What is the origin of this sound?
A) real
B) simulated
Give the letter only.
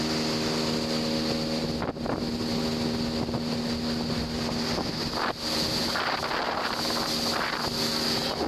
A